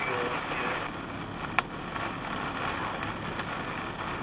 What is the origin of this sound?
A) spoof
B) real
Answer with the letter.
B